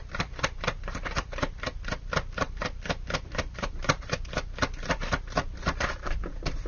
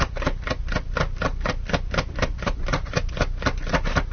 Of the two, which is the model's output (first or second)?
first